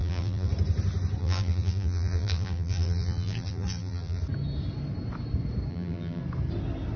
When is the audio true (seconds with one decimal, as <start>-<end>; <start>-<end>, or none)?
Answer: 0.5-1.2; 4.2-5.7; 6.2-7.0